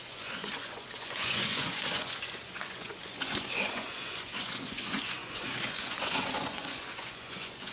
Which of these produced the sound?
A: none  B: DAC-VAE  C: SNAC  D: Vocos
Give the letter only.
D